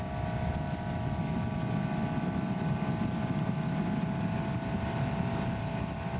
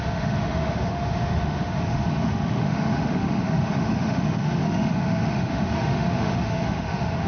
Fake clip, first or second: second